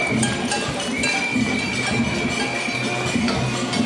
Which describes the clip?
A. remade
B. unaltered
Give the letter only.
B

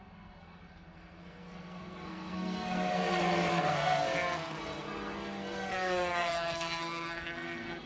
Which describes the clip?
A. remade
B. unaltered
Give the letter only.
A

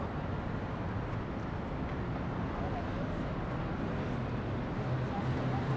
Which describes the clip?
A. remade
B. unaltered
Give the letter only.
B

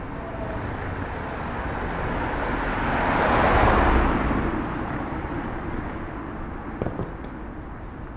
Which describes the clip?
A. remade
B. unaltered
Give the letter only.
B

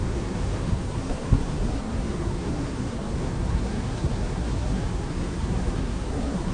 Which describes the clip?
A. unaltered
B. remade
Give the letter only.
B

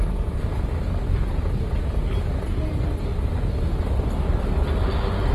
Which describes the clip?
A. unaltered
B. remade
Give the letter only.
A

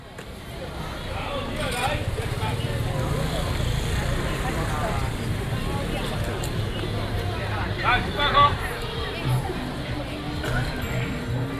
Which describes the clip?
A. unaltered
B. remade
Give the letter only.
A